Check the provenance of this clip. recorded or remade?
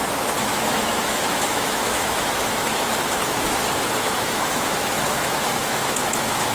remade